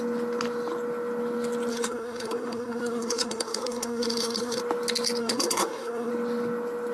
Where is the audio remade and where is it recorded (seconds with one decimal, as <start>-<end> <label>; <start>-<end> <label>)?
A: 0.0-1.7 recorded; 1.7-4.6 remade; 4.6-5.2 recorded; 5.2-6.1 remade; 6.1-6.9 recorded